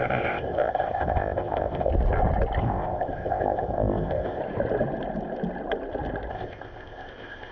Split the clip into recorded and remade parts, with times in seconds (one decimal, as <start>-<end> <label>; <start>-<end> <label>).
0.0-1.9 remade; 1.9-2.6 recorded; 2.6-4.4 remade; 4.4-6.3 recorded; 6.3-7.5 remade